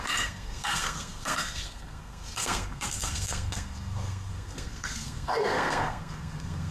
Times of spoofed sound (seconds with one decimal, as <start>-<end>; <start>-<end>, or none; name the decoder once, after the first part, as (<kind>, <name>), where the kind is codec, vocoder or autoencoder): 0.0-6.7 (codec, SNAC)